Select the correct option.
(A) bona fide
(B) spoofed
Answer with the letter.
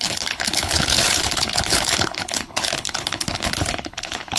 B